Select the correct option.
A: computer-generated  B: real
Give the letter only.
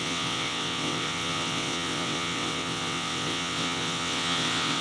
A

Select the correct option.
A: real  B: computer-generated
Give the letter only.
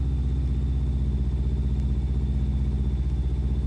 A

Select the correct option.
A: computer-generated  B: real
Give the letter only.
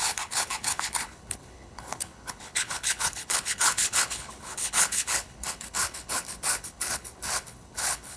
A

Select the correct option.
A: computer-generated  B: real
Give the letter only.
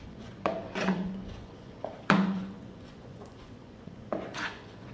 A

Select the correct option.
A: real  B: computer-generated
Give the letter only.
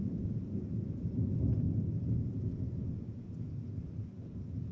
B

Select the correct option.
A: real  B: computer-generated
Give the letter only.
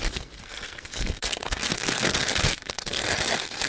B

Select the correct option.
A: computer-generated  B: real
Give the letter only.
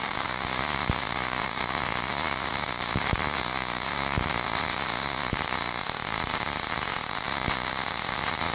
A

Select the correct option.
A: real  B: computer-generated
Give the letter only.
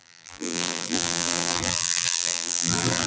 B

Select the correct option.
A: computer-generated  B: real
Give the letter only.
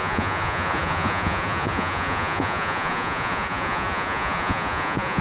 A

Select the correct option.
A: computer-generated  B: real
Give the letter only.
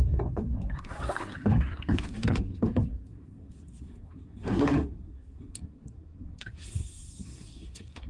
A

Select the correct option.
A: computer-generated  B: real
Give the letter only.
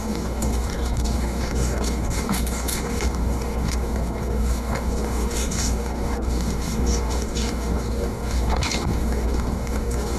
A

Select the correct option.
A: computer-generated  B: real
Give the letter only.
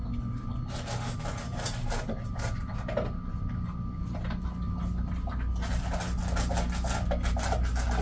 B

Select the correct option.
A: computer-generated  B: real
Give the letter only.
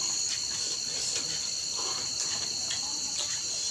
B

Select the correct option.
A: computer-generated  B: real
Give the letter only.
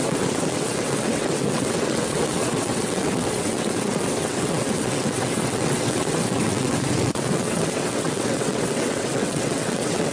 A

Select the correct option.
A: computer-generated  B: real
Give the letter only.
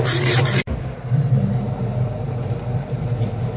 B